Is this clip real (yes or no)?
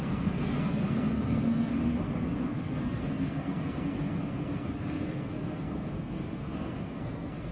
no